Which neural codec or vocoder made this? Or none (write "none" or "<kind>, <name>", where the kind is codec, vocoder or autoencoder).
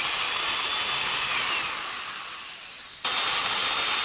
none